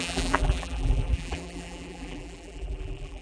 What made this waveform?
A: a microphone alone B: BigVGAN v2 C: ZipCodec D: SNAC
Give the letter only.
B